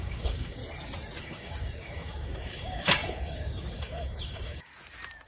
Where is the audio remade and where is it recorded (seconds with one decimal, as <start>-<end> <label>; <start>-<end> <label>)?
0.0-0.6 remade; 0.6-1.2 recorded; 1.2-4.7 remade; 4.7-5.3 recorded